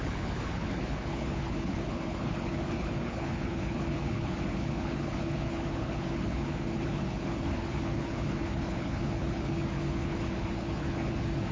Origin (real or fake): fake